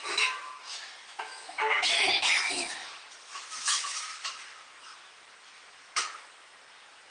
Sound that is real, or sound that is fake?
fake